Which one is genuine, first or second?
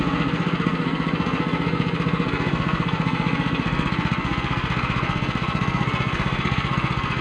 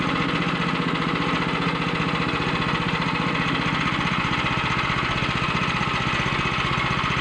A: second